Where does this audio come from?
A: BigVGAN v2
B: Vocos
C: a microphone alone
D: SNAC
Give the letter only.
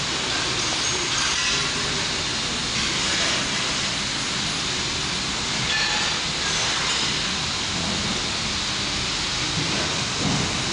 C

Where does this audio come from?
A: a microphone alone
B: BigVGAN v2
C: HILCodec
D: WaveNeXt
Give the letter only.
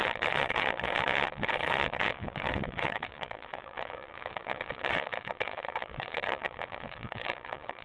D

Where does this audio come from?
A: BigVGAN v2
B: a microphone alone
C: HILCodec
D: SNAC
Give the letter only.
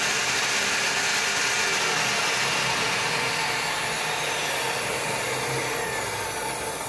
B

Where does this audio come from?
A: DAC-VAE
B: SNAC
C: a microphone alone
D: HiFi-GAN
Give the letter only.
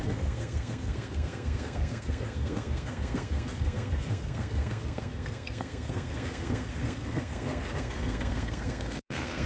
B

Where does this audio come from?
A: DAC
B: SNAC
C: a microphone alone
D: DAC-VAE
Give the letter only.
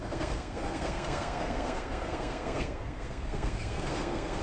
B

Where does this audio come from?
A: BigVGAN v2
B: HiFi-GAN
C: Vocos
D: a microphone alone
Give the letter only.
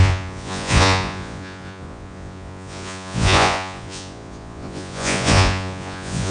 C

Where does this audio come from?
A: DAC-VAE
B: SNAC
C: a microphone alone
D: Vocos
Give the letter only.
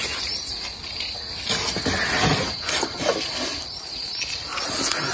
C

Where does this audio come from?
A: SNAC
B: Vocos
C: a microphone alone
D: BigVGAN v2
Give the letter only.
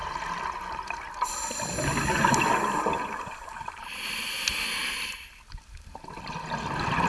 C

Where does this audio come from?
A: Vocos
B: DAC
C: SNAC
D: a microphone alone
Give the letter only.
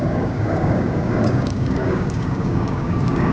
B